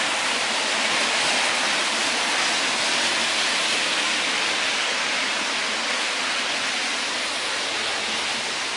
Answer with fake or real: real